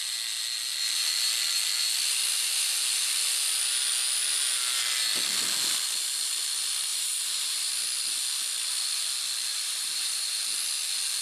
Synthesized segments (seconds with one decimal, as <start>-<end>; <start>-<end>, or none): 6.9-7.7; 9.5-10.4